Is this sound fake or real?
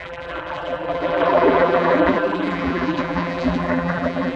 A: fake